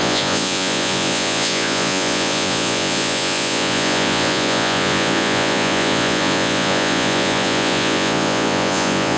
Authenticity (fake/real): fake